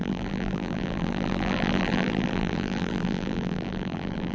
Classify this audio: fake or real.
fake